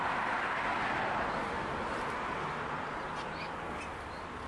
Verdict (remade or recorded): recorded